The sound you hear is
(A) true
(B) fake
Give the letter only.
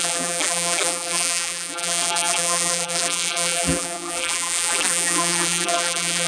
B